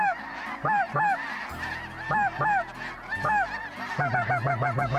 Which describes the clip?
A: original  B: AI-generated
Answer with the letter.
A